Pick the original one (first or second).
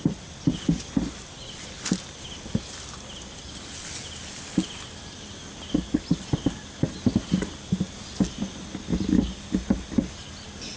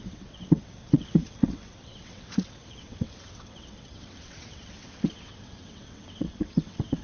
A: first